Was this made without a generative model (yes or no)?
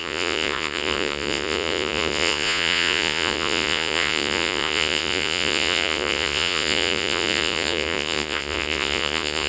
no